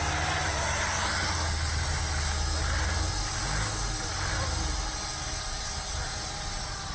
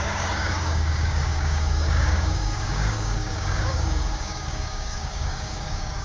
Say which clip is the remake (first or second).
second